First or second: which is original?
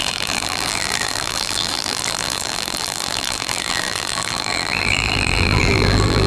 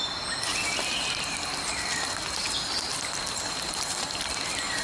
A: second